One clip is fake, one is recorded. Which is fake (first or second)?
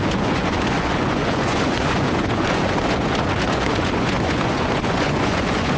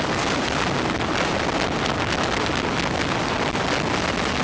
first